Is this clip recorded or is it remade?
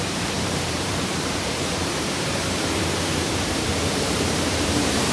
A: remade